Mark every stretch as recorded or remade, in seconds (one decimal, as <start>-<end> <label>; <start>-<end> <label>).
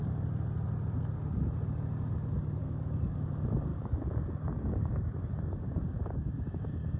0.0-2.6 recorded; 2.6-3.3 remade; 3.3-3.7 recorded; 3.7-7.0 remade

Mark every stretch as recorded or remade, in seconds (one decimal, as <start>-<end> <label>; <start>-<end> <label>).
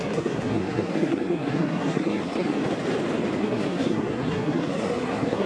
0.0-2.6 remade; 2.6-3.4 recorded; 3.4-5.5 remade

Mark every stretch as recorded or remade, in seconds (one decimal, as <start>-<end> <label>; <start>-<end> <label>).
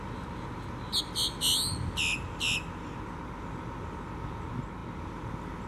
0.0-5.7 recorded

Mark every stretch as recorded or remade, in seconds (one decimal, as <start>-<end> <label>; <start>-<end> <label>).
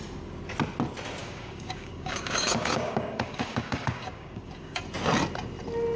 0.0-1.2 recorded; 1.2-4.8 remade; 4.8-6.0 recorded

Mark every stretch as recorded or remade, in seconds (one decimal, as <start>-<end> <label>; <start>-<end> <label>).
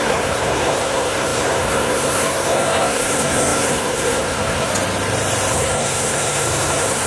0.0-4.7 remade; 4.7-5.5 recorded; 5.5-7.1 remade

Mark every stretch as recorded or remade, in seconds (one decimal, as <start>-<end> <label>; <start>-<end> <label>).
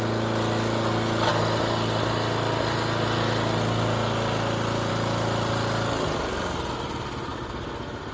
0.0-8.1 recorded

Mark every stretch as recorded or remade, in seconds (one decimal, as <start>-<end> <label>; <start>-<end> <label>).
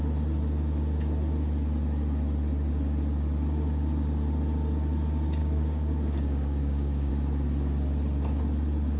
0.0-5.4 recorded; 5.4-7.1 remade; 7.1-9.0 recorded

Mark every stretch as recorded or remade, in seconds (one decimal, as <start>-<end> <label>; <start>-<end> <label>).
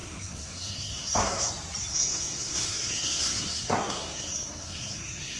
0.0-1.5 remade; 1.5-1.9 recorded; 1.9-5.4 remade